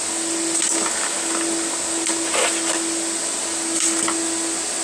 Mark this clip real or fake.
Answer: real